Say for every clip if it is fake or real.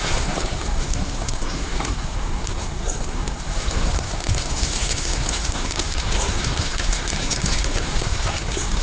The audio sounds fake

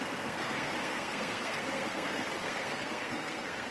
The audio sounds fake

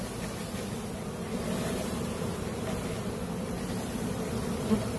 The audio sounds real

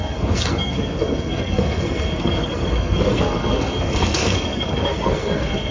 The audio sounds fake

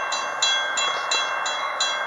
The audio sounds real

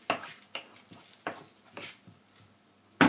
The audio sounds real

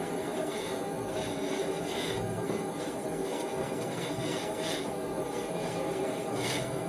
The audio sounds fake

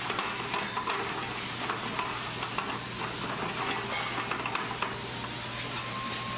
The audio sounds real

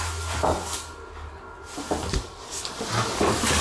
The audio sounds real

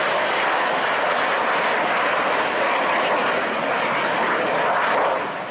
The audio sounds real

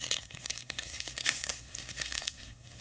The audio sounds fake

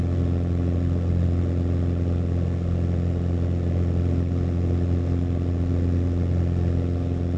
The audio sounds real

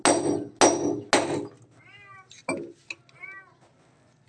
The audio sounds real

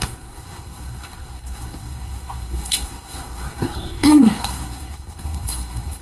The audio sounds fake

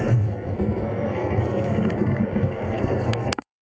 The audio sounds fake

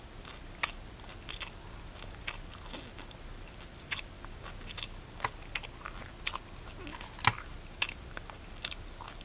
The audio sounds real